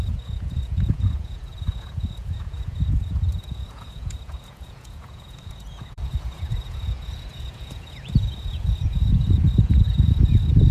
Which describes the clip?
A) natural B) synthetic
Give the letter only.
B